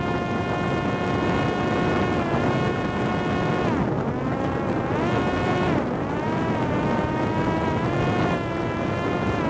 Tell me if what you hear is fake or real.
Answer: real